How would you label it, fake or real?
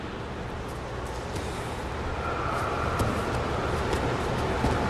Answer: real